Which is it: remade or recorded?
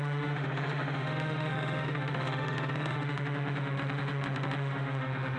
remade